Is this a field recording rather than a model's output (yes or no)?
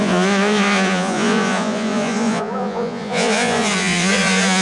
no